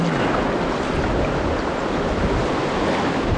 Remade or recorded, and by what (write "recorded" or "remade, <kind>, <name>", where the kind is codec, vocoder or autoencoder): recorded